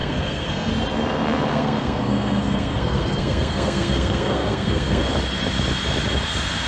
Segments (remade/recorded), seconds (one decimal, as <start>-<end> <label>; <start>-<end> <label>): 0.0-0.7 remade; 0.7-1.5 recorded; 1.5-5.0 remade; 5.0-6.7 recorded